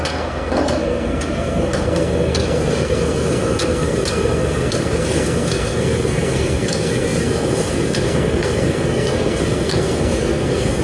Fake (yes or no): yes